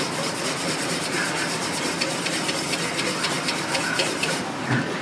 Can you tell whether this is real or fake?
fake